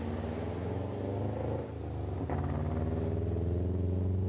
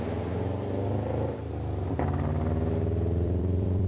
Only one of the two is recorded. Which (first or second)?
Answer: first